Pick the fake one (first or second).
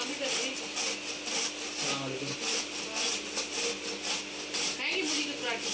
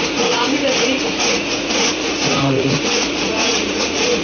second